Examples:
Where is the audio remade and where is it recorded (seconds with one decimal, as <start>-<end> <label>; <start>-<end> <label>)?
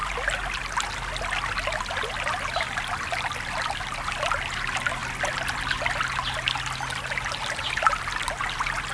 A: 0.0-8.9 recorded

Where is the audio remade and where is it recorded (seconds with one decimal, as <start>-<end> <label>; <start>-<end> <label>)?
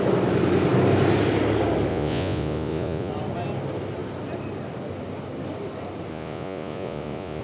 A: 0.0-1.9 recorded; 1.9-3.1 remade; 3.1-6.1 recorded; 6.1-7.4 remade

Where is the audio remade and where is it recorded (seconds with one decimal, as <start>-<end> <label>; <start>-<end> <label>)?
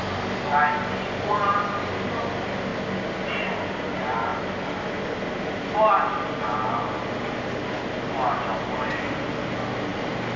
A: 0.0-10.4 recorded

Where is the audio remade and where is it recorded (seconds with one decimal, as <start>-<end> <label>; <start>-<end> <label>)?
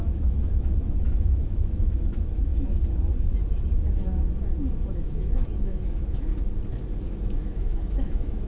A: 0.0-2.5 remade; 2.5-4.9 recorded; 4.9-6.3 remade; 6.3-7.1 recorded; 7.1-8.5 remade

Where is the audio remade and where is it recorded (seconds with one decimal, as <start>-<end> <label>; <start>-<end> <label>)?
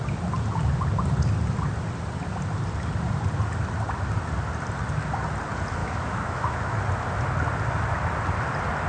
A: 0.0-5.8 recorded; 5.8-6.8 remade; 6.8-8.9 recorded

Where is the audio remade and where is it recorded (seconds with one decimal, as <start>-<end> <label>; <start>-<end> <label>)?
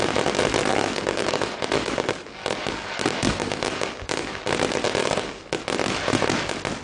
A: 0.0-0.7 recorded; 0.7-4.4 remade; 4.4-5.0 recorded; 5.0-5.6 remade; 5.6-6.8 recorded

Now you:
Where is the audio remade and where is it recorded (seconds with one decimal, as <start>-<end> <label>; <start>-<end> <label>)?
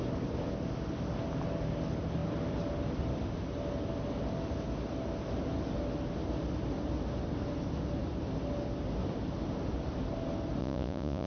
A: 0.0-10.6 recorded; 10.6-11.3 remade